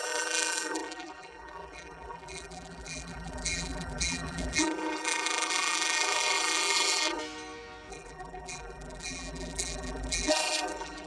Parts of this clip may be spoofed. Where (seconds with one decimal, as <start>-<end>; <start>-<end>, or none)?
0.0-7.2; 7.9-11.1